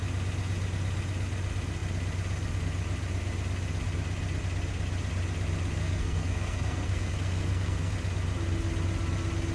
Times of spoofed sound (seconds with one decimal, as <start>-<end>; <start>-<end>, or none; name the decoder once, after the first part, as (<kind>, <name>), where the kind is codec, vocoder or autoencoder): 5.8-7.9 (codec, SNAC)